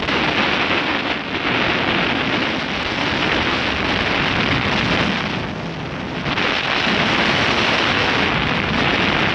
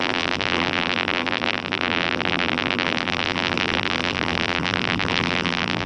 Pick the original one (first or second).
first